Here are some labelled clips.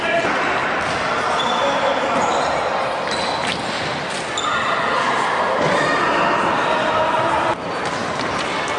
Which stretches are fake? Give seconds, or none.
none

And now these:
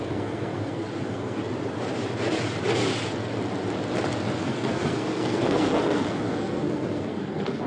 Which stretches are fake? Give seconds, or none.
0.0-1.4 (codec, SNAC); 4.4-7.7

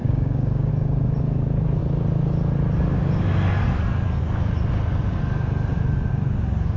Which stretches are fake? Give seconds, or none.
0.0-0.7 (codec, DAC)

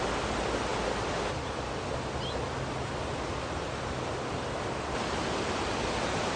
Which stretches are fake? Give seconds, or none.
none

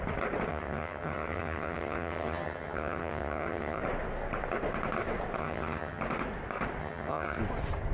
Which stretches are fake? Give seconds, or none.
0.5-3.8 (vocoder, HiFi-GAN); 5.4-6.0; 6.8-7.4